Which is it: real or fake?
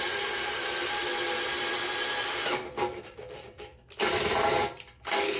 fake